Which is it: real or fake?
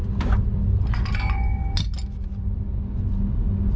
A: real